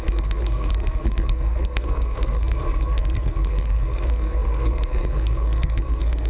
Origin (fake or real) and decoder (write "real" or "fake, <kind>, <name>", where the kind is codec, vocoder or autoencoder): fake, codec, SNAC